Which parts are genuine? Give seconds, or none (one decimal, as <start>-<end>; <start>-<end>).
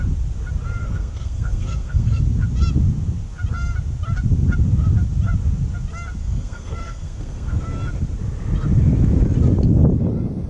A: 0.0-0.8; 2.2-6.2; 7.6-10.5